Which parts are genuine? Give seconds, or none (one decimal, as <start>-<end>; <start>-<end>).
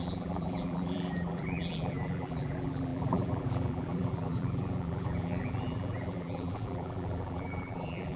none